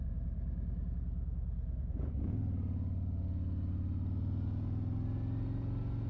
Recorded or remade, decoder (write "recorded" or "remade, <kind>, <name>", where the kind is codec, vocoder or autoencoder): recorded